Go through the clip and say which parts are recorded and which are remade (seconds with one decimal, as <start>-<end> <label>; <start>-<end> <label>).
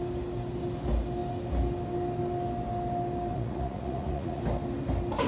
0.0-3.3 recorded; 3.3-4.4 remade; 4.4-5.3 recorded